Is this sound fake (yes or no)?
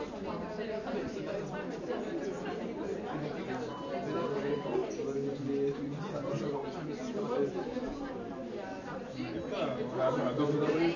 no